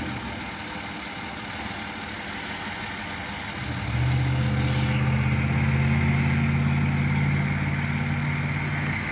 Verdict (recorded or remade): recorded